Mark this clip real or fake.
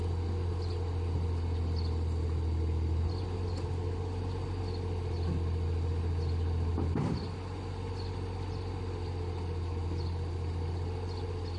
real